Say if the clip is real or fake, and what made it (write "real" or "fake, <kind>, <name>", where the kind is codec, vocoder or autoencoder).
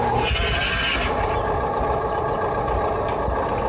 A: real